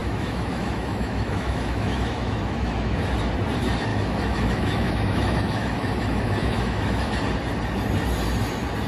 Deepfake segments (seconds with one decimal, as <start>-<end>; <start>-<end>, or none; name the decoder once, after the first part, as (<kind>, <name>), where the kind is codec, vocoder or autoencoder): 0.0-3.0 (autoencoder, DAC-VAE); 3.9-7.1